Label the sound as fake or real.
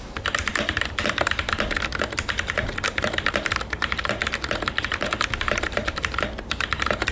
fake